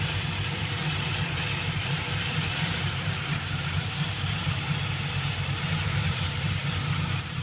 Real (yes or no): no